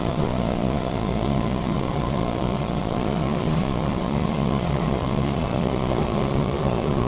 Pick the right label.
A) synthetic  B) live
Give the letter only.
A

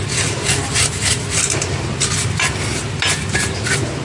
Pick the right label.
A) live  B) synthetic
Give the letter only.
A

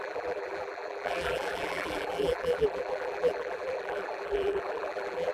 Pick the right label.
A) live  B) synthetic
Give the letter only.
B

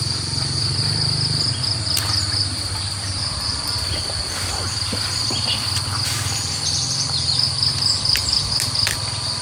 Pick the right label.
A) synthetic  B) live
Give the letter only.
B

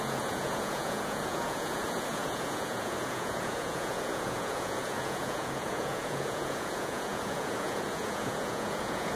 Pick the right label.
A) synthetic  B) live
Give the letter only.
A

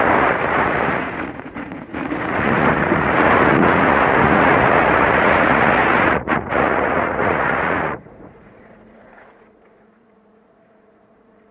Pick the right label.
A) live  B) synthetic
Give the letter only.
B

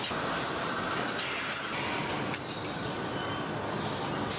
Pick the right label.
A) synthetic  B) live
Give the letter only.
B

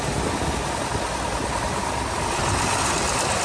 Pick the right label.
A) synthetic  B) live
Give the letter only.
B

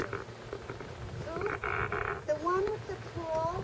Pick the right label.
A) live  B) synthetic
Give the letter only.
A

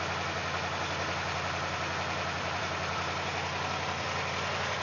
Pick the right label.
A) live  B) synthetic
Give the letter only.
A